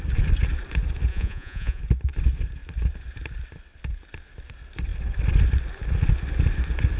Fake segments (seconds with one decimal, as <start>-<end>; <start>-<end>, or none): 1.1-1.8